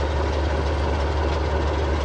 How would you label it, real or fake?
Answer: real